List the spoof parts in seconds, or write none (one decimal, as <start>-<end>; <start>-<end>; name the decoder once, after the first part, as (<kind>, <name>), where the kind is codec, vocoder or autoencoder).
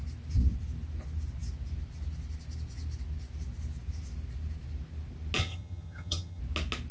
5.4-6.4 (vocoder, HiFi-GAN)